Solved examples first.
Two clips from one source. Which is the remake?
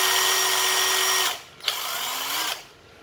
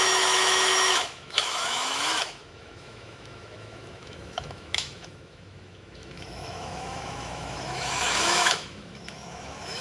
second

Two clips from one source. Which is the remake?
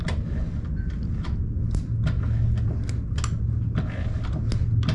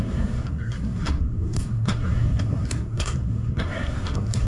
second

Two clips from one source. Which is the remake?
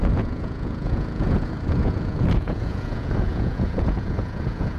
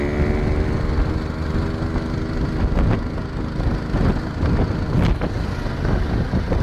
first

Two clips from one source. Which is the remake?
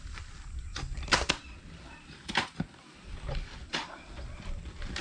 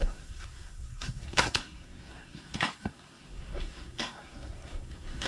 second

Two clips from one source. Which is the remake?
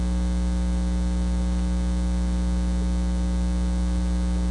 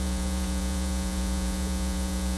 second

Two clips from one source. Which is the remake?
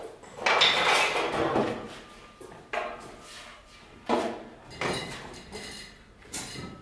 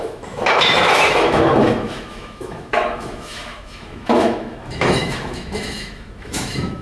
second